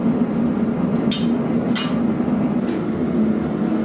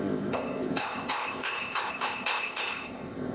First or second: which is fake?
second